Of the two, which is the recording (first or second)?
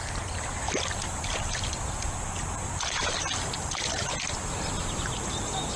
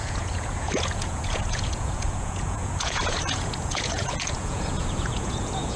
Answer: first